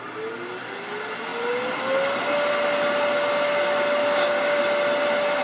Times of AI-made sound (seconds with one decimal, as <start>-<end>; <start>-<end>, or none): 4.0-4.6

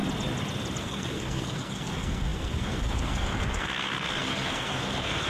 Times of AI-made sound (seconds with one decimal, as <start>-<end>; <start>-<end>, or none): 0.8-5.3

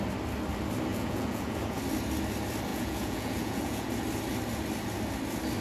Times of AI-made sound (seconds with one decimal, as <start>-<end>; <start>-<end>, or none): 0.9-1.8; 2.7-3.9

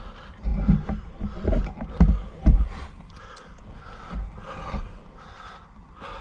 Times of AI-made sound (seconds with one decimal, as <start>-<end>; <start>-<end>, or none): none

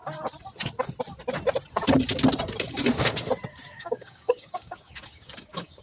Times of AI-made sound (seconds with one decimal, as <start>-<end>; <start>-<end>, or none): 3.5-5.8

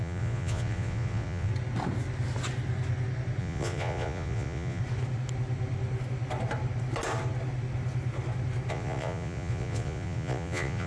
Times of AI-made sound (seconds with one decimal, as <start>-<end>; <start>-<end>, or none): 0.0-1.5; 3.4-4.8; 8.7-10.9